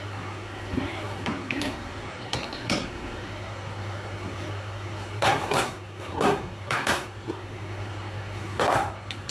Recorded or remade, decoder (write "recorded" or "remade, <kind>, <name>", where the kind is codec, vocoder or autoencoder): remade, codec, SNAC